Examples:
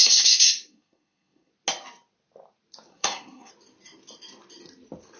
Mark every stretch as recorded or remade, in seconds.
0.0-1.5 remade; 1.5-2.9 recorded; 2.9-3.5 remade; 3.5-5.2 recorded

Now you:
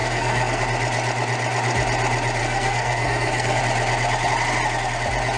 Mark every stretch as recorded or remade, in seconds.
0.0-0.6 remade; 0.6-2.4 recorded; 2.4-3.6 remade; 3.6-5.4 recorded

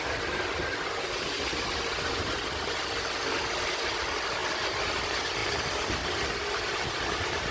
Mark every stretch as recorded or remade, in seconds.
0.0-7.5 recorded

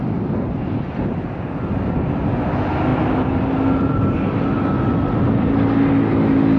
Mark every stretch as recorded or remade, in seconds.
0.0-6.6 recorded

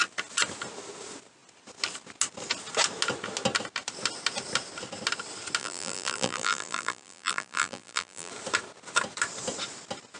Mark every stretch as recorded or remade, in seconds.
0.0-5.6 recorded; 5.6-8.3 remade; 8.3-10.2 recorded

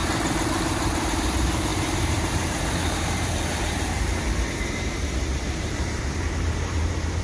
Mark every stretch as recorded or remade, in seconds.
0.0-7.2 remade

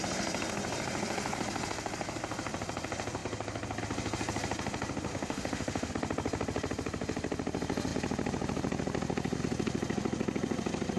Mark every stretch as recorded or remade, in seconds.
0.0-5.1 recorded; 5.1-5.9 remade; 5.9-11.0 recorded